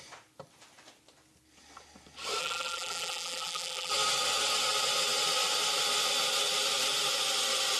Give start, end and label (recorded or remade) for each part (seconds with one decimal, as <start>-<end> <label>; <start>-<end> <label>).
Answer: 0.0-2.4 recorded; 2.4-3.9 remade; 3.9-7.8 recorded